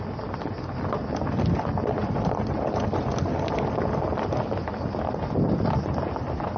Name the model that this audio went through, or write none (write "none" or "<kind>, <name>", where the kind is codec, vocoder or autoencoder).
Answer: none